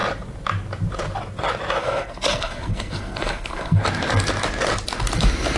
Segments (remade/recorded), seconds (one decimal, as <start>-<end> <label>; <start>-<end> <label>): 0.0-1.8 recorded; 1.8-3.8 remade; 3.8-5.6 recorded